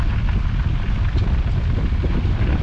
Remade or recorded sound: recorded